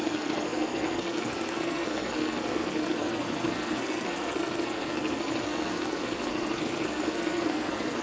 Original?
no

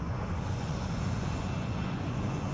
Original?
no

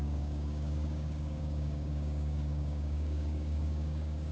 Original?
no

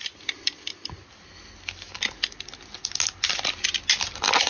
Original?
yes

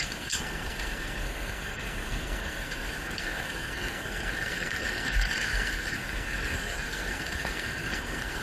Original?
no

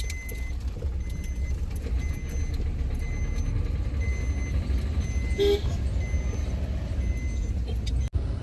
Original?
yes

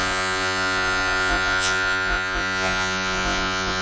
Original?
no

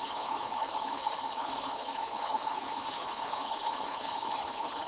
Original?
no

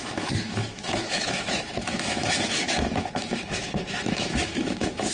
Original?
no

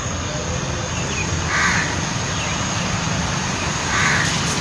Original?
yes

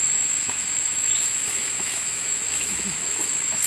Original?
no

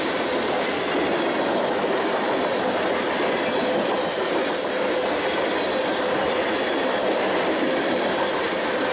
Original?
yes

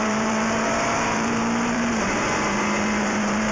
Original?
no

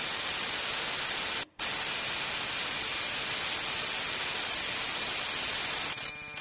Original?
yes